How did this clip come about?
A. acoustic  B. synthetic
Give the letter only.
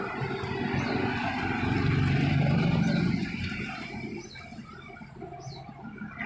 A